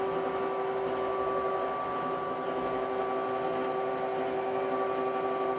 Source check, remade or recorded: recorded